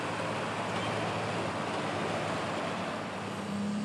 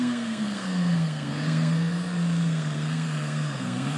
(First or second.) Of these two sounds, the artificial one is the second